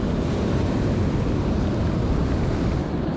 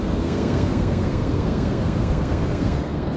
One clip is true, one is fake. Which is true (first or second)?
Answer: first